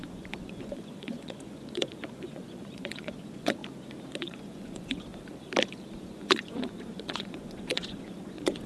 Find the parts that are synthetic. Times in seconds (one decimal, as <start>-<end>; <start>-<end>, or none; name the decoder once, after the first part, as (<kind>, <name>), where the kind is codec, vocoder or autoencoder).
0.0-3.6 (vocoder, Vocos); 4.2-5.1; 6.0-8.7